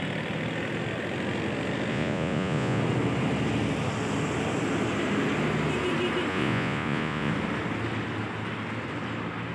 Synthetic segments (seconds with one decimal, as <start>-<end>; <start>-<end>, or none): 1.9-2.8; 6.3-7.3